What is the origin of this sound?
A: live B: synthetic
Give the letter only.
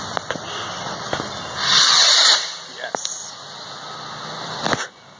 A